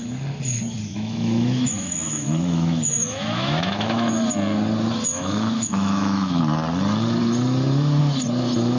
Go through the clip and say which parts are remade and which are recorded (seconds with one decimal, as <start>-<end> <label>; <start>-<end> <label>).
0.0-0.9 recorded; 0.9-4.1 remade; 4.1-5.1 recorded; 5.1-6.4 remade; 6.4-8.8 recorded